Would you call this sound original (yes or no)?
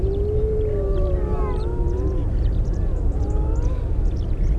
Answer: yes